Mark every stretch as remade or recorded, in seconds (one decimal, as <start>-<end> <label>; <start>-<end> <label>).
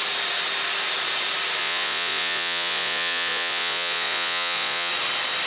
0.0-1.6 recorded; 1.6-4.9 remade; 4.9-5.5 recorded